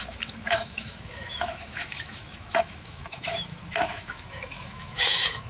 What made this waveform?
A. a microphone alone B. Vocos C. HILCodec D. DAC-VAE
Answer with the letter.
D